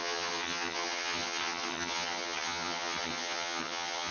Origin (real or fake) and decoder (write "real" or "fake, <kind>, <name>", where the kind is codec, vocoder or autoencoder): fake, vocoder, HiFi-GAN